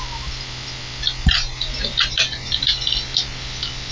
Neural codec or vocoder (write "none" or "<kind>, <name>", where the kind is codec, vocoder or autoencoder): none